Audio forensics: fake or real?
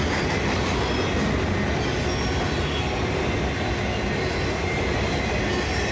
real